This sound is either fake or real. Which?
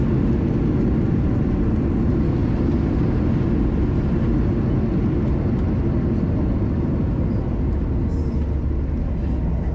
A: real